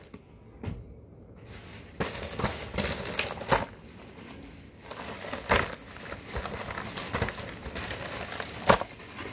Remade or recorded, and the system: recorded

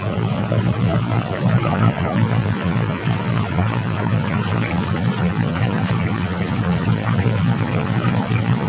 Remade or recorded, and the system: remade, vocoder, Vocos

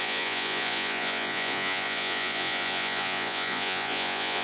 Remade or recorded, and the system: remade, vocoder, Vocos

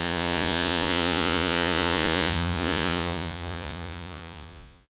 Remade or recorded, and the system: remade, vocoder, Vocos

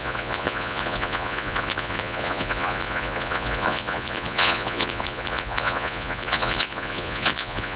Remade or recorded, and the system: remade, vocoder, Vocos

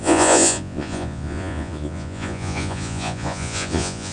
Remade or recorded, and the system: remade, vocoder, Vocos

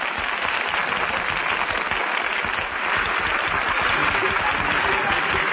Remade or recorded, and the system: recorded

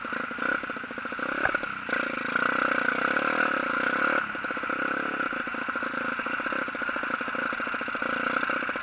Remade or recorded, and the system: recorded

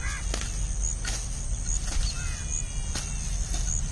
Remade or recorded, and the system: recorded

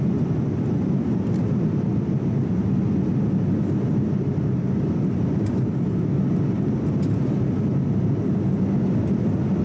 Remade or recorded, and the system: recorded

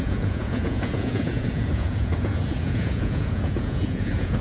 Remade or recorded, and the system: remade, vocoder, Vocos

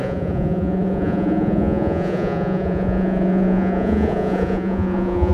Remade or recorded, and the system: remade, vocoder, Vocos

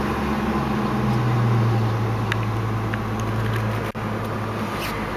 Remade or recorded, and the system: recorded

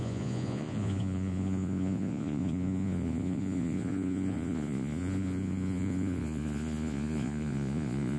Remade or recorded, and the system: remade, vocoder, Vocos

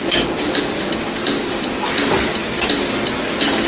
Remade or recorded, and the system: recorded